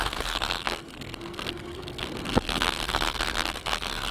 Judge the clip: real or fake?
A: fake